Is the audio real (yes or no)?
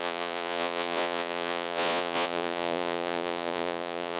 no